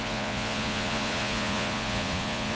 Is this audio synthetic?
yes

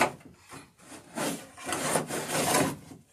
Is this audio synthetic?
no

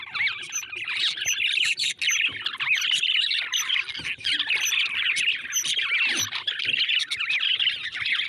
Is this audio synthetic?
no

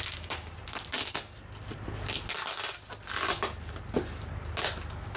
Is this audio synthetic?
no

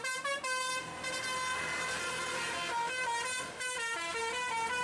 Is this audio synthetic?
no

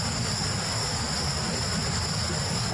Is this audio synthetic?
no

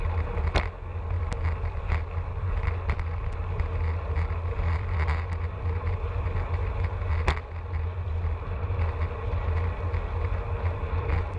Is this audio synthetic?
no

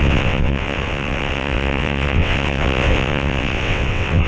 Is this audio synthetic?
yes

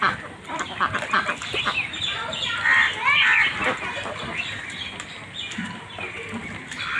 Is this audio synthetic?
no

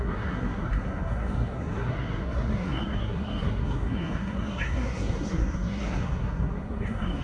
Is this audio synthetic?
yes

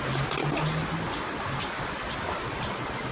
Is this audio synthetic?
no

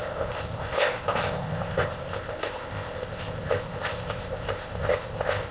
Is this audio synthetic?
yes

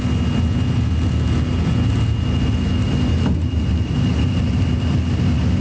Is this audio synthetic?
no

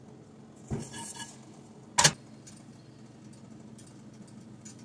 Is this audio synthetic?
no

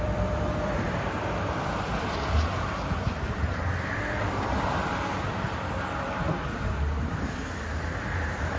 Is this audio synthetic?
yes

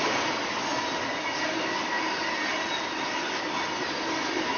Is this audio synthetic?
no